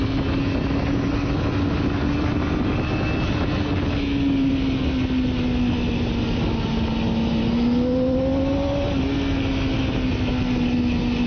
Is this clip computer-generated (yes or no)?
no